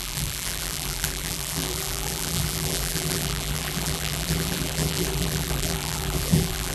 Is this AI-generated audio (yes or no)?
yes